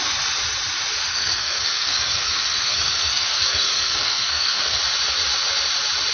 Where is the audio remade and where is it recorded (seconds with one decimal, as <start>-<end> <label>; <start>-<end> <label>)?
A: 0.0-1.1 recorded; 1.1-4.8 remade; 4.8-6.1 recorded